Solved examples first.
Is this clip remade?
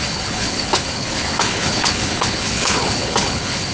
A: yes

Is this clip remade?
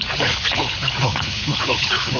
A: yes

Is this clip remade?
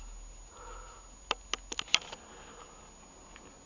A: no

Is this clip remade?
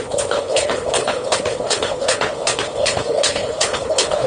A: yes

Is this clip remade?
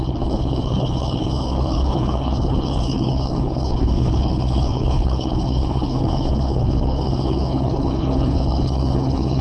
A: yes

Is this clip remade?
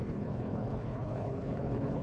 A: yes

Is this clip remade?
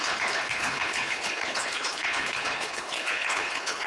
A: yes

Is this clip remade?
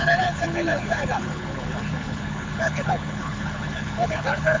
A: yes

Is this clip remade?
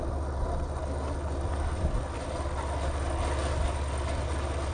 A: no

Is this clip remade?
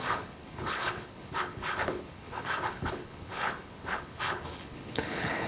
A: yes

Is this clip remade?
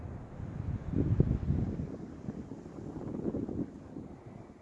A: no